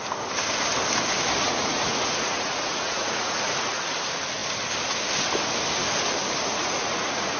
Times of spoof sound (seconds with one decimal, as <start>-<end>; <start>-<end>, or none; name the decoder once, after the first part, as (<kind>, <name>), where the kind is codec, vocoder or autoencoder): 1.4-3.8 (vocoder, Vocos); 6.6-7.4